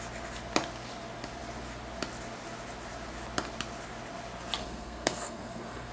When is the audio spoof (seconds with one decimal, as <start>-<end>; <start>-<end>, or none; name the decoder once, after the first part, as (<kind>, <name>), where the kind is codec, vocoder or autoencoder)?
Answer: 4.6-5.9 (codec, SNAC)

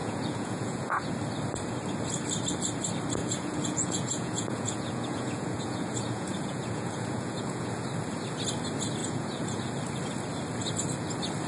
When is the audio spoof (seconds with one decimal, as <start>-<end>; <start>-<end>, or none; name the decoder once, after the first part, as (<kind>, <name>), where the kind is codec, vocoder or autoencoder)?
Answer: 0.0-1.1 (vocoder, Vocos); 3.2-7.7; 9.0-9.6

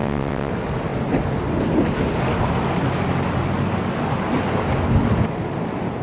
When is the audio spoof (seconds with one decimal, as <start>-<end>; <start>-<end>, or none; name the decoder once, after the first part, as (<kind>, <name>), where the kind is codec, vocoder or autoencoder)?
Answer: 0.0-0.5 (vocoder, WaveNeXt)

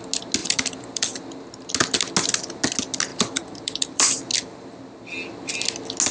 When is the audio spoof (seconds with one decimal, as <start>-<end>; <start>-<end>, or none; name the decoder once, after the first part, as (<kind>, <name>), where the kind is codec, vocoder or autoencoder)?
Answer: 0.4-1.2 (vocoder, BigVGAN v2); 3.1-4.2

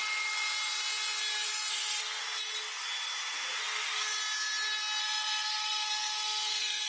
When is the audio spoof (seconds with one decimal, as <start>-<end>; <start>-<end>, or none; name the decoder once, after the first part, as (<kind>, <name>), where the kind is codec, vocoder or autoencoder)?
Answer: 1.7-2.2 (codec, SNAC); 3.6-4.1; 5.0-6.9